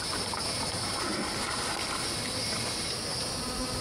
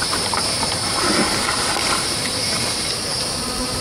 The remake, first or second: second